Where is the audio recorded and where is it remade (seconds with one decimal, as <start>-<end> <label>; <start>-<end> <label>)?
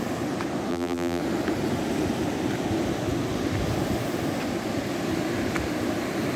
0.0-0.7 recorded; 0.7-1.2 remade; 1.2-6.4 recorded